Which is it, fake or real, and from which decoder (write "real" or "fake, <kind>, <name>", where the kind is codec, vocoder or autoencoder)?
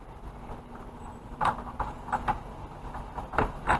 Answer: real